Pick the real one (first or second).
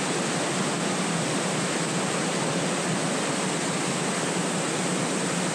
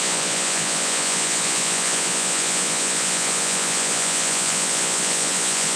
first